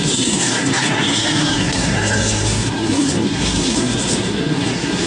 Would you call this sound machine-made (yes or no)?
yes